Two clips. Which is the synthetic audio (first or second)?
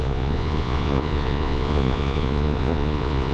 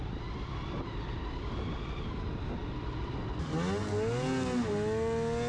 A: first